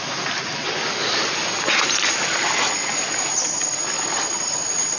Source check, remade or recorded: recorded